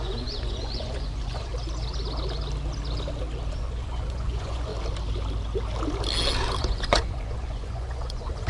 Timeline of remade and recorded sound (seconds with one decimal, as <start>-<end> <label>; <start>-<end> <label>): 0.0-1.5 remade; 1.5-3.5 recorded; 3.5-4.7 remade; 4.7-6.6 recorded; 6.6-8.5 remade